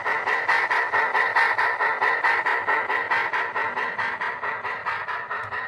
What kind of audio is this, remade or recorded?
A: recorded